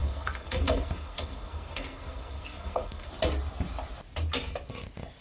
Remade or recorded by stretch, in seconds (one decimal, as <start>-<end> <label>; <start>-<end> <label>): 0.0-3.1 remade; 3.1-5.2 recorded